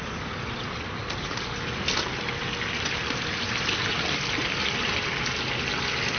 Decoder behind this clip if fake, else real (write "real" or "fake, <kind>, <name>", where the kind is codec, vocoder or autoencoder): real